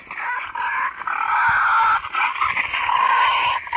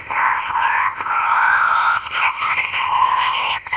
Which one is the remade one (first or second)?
second